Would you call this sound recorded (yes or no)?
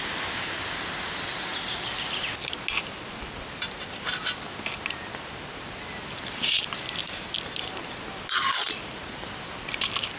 yes